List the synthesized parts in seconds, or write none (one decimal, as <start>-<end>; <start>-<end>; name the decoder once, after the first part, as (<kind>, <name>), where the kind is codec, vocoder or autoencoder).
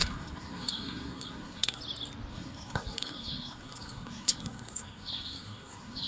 0.0-1.8 (codec, SNAC); 2.3-6.1